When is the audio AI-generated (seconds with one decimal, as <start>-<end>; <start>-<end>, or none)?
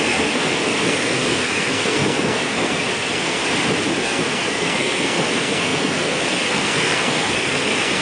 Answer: 0.0-3.4; 4.0-8.0